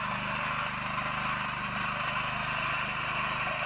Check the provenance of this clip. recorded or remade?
recorded